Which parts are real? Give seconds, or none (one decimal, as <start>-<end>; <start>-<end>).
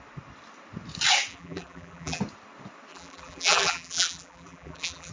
0.0-1.3; 2.2-2.9